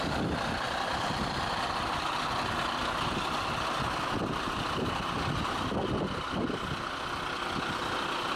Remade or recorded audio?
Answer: recorded